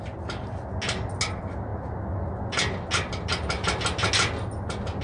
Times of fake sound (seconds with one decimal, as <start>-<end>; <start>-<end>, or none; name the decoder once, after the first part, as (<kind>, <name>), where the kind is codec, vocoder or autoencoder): none